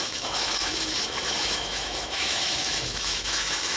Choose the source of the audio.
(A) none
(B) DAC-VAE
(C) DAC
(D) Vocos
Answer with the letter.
B